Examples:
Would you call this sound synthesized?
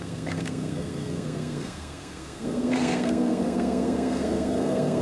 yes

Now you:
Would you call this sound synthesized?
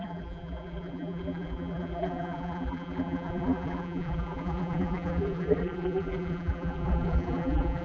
yes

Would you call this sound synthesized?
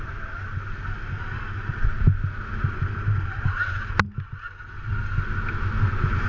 no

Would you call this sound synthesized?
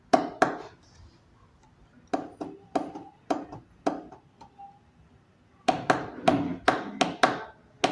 no